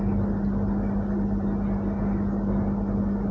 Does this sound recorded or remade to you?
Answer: recorded